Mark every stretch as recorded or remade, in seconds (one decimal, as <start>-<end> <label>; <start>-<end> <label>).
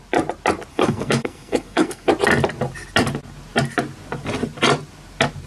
0.0-0.7 recorded; 0.7-2.1 remade; 2.1-5.5 recorded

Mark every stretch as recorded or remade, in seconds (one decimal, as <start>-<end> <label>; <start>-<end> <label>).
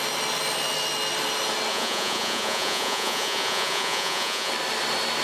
0.0-1.7 recorded; 1.7-4.5 remade; 4.5-5.2 recorded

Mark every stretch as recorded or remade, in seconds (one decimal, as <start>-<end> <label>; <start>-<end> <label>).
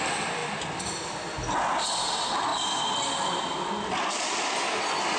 0.0-5.2 recorded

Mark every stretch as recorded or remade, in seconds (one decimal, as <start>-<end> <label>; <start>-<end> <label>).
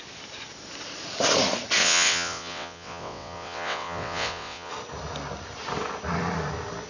0.0-1.8 recorded; 1.8-4.7 remade; 4.7-6.9 recorded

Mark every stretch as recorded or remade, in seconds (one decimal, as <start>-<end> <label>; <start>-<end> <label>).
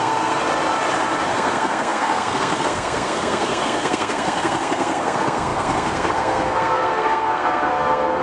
0.0-0.4 remade; 0.4-1.3 recorded; 1.3-8.2 remade